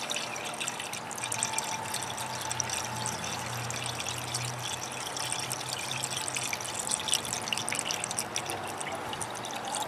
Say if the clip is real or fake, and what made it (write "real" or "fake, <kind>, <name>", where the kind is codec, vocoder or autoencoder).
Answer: real